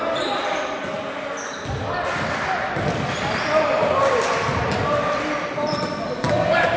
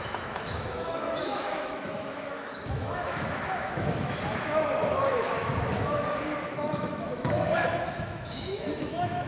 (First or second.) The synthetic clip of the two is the second